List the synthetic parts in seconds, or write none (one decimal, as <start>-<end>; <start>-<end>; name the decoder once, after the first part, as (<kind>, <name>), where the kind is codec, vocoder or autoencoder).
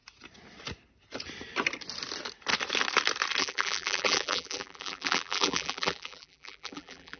3.4-7.2 (vocoder, BigVGAN v2)